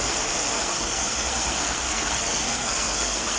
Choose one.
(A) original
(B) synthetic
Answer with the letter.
B